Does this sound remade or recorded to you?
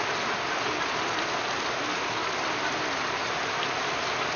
recorded